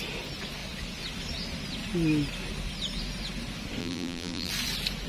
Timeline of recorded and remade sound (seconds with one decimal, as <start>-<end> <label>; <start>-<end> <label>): 0.0-3.8 recorded; 3.8-4.5 remade; 4.5-5.1 recorded